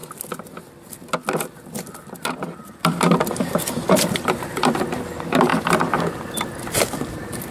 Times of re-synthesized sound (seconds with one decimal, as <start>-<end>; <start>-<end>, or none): 2.8-4.8